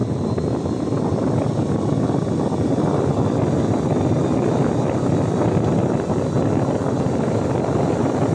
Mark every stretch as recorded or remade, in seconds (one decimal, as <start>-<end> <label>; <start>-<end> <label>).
0.0-8.3 recorded